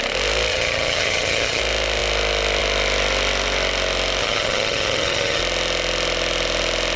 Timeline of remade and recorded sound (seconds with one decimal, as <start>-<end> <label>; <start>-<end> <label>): 0.0-0.5 recorded; 0.5-1.6 remade; 1.6-4.2 recorded; 4.2-5.4 remade; 5.4-7.0 recorded